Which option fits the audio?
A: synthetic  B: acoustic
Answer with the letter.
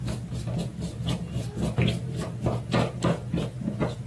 B